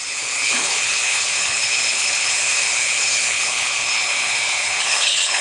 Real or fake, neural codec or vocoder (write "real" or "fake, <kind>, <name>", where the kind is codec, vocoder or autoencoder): fake, codec, HILCodec